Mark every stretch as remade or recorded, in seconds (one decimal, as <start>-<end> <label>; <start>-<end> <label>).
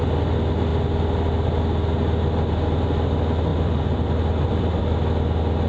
0.0-3.5 recorded; 3.5-4.8 remade; 4.8-5.7 recorded